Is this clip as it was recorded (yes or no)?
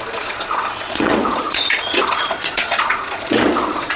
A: no